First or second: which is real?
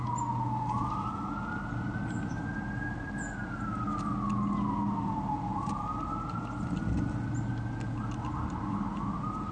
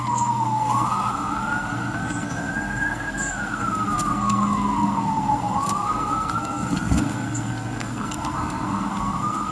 first